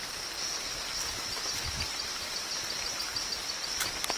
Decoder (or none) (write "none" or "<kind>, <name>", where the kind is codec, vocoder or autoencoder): none